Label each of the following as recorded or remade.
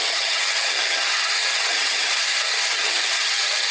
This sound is remade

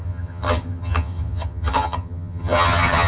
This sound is remade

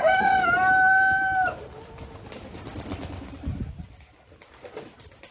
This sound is recorded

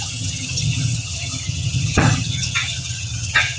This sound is remade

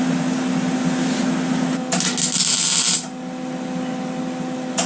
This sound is recorded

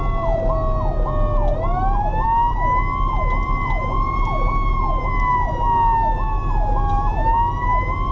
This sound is recorded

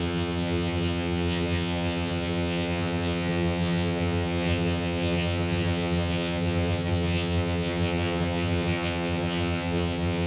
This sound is remade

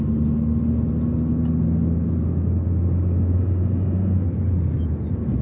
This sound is recorded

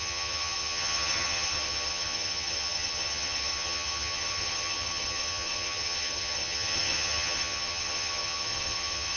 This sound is remade